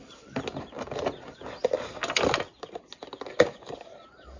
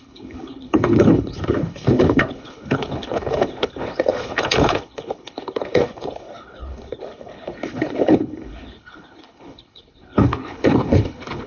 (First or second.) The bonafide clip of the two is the first